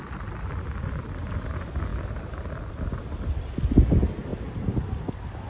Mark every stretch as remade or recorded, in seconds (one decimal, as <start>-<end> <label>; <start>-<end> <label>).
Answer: 0.0-5.5 recorded